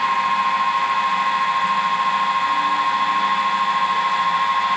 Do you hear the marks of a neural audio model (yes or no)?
no